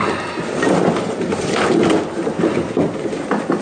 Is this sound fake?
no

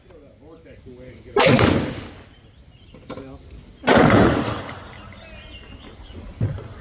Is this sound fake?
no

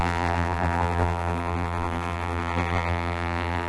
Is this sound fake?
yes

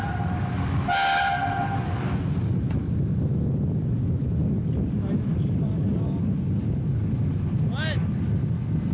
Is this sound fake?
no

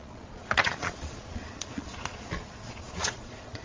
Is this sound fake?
yes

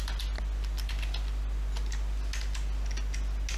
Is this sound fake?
no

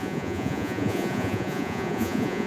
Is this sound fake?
yes